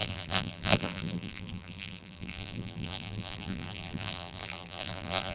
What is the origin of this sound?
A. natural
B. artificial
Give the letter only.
B